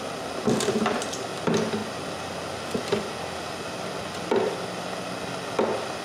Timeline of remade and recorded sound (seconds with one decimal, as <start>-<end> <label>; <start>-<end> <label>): 0.0-6.0 recorded